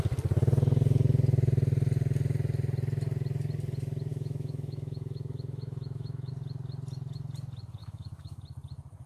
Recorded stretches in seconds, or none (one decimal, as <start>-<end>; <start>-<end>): 0.0-4.1; 6.3-7.8; 8.4-9.1